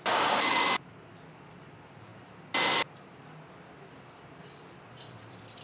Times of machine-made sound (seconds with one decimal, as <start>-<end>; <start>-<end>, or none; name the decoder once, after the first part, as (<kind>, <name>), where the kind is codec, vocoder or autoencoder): none

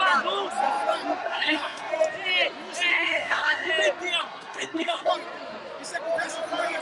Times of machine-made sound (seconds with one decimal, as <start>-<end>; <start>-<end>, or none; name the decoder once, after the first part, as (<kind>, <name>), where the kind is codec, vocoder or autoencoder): 1.2-1.9 (codec, SNAC); 2.9-3.7; 4.2-5.1

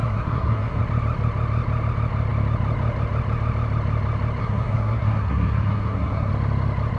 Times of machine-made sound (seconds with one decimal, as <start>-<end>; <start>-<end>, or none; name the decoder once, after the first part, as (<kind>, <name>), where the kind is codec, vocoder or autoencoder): 0.0-0.8 (codec, SNAC); 4.4-6.3

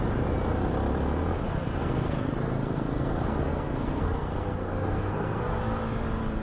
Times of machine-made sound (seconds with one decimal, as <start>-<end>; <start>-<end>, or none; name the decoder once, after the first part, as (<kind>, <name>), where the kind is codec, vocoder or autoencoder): 1.8-5.6 (codec, SNAC)

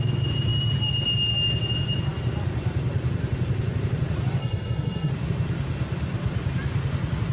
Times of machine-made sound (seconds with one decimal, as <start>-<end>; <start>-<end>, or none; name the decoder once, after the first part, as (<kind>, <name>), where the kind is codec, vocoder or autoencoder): 4.4-5.1 (codec, SNAC)

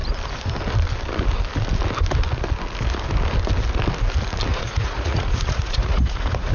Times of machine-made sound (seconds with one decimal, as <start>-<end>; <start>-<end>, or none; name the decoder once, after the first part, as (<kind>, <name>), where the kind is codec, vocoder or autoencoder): 4.5-6.5 (vocoder, Vocos)

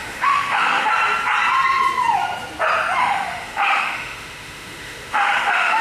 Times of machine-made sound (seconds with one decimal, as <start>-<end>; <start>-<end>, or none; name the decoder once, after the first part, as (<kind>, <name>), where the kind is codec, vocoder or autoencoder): 0.0-0.9 (autoencoder, DAC-VAE); 3.0-5.8